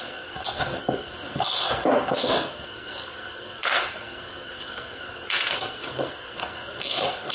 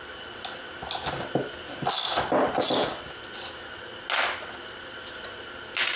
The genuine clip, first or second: second